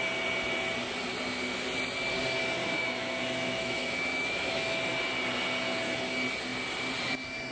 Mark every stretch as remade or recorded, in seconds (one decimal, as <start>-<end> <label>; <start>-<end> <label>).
0.0-2.6 recorded; 2.6-4.8 remade; 4.8-7.5 recorded